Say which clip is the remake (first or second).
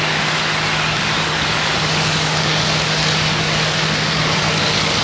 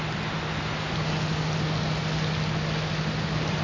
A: first